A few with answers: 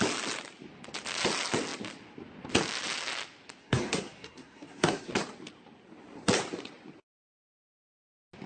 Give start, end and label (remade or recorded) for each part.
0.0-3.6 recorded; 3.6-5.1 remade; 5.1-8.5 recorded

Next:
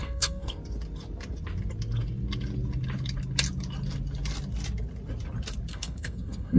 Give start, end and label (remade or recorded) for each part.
0.0-0.6 remade; 0.6-5.7 recorded; 5.7-6.6 remade

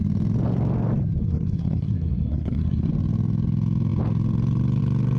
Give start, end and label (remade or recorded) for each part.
0.0-1.2 recorded; 1.2-2.9 remade; 2.9-5.2 recorded

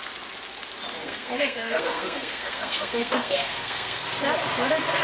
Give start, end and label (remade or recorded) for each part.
0.0-1.0 recorded; 1.0-4.0 remade; 4.0-5.0 recorded

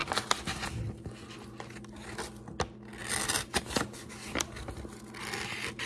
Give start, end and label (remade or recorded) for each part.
0.0-5.9 recorded

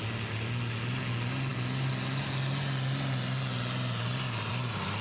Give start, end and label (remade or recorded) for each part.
0.0-5.0 recorded

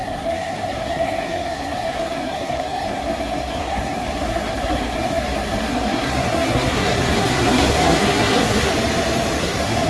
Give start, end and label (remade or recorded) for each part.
0.0-8.7 remade; 8.7-9.4 recorded; 9.4-9.9 remade